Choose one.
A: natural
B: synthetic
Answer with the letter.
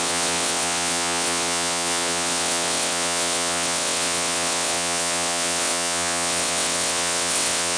B